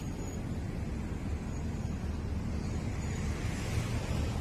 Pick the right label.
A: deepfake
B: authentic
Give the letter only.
B